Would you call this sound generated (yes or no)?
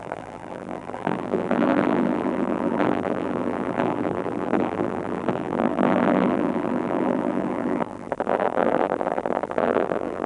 yes